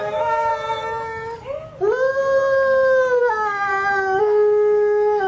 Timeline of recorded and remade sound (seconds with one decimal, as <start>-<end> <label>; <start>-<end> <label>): 0.0-0.5 remade; 0.5-3.2 recorded; 3.2-3.7 remade; 3.7-4.2 recorded; 4.2-5.3 remade